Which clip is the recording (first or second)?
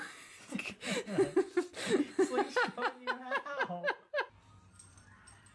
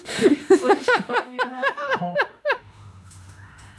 first